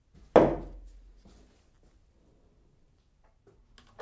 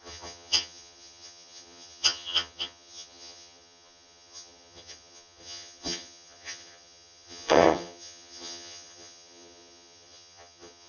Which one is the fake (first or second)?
second